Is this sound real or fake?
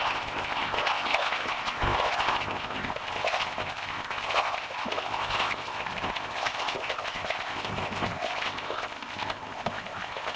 fake